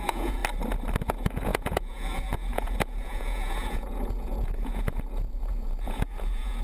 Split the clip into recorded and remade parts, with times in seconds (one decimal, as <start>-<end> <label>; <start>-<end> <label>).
0.0-0.4 remade; 0.4-1.0 recorded; 1.0-6.6 remade